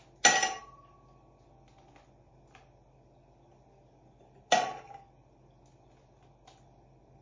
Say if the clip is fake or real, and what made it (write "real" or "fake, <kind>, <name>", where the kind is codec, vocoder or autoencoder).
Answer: real